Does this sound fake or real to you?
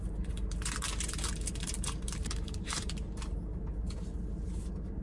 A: fake